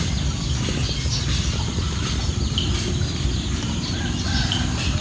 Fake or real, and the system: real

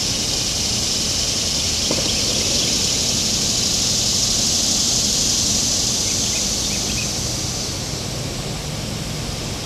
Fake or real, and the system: real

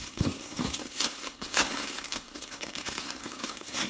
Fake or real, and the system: fake, codec, SNAC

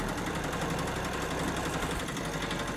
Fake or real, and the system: real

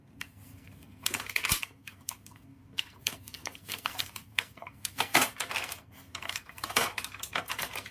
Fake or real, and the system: fake, codec, SNAC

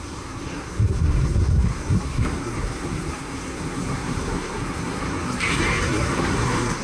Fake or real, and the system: fake, codec, SNAC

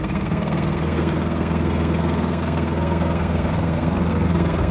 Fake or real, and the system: fake, codec, SNAC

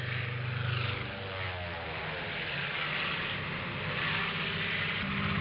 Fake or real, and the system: real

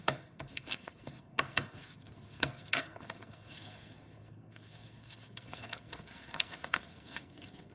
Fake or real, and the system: fake, codec, SNAC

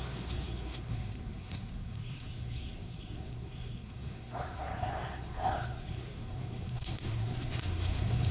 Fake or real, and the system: fake, codec, SNAC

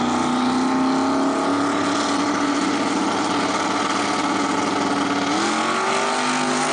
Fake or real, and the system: real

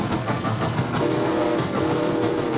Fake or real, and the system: fake, codec, SNAC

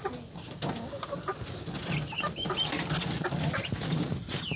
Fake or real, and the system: real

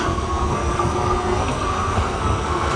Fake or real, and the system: fake, codec, SNAC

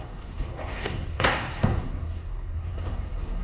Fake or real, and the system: fake, codec, SNAC